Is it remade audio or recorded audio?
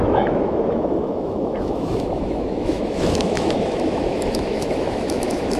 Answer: remade